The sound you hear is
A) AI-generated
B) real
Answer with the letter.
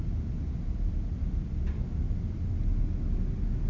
B